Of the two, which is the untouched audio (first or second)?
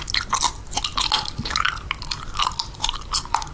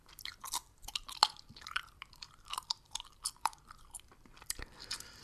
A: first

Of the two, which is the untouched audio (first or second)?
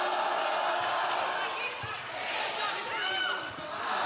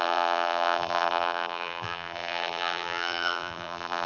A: first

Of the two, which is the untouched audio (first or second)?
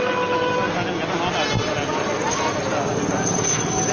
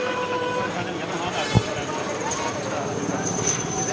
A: first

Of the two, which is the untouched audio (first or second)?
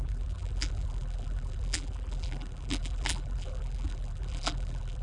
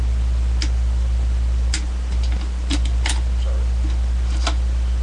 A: second